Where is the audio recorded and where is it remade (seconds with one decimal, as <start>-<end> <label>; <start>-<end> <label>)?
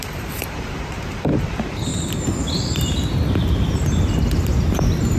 0.0-1.9 remade; 1.9-4.4 recorded; 4.4-5.2 remade